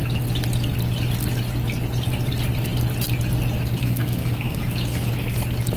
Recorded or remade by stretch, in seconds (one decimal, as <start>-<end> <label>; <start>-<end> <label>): 0.0-3.8 recorded; 3.8-4.6 remade; 4.6-5.8 recorded